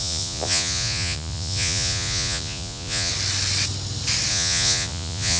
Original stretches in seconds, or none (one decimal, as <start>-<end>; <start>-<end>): 3.1-4.3